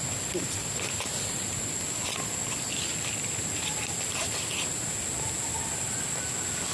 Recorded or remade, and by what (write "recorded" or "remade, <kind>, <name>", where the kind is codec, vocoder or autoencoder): recorded